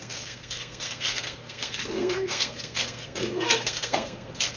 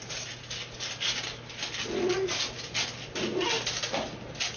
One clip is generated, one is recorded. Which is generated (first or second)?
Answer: first